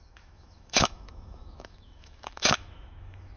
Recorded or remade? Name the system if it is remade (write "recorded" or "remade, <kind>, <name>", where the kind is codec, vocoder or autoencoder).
remade, autoencoder, DAC-VAE